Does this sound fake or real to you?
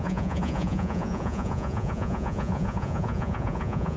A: fake